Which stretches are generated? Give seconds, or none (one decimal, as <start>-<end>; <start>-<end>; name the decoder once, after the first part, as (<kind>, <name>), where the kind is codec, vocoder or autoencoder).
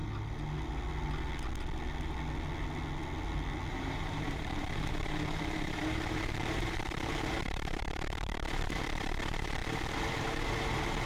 3.7-11.1 (vocoder, BigVGAN v2)